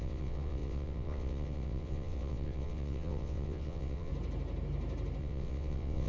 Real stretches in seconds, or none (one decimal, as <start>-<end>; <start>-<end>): 4.1-5.2